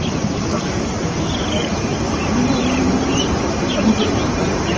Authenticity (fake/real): fake